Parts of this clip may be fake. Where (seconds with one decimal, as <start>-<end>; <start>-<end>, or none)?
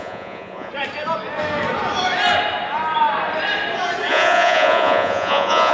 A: 0.0-0.7; 4.1-5.7